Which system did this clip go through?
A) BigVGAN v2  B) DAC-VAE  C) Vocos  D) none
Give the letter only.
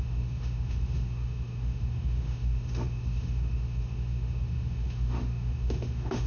B